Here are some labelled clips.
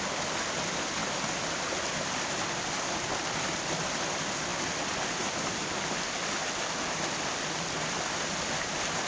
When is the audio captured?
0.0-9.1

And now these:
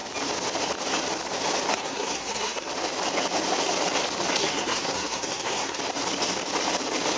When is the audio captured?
0.0-1.7; 2.7-4.4; 5.8-7.2

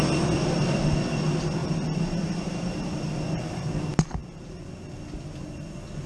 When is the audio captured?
0.0-6.1

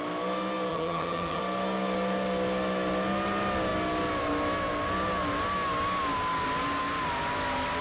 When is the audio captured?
0.0-0.7; 1.4-7.8